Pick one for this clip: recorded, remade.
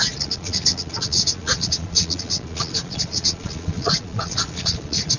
remade